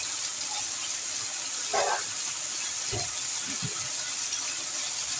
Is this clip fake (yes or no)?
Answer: no